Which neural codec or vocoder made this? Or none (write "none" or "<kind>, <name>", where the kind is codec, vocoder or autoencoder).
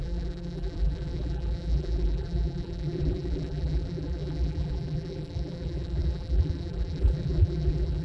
vocoder, BigVGAN v2